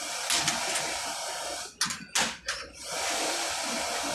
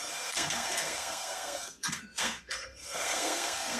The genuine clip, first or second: first